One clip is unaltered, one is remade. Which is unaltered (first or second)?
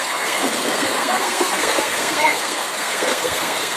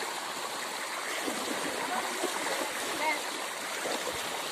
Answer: second